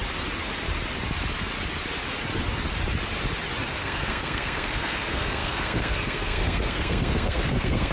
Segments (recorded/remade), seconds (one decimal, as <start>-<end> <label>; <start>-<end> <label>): 0.0-3.7 recorded; 3.7-7.9 remade